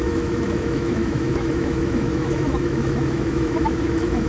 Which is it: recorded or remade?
remade